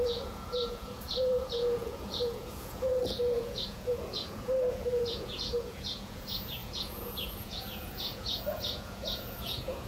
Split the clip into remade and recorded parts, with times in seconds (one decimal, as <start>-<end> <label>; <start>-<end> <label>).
0.0-9.9 remade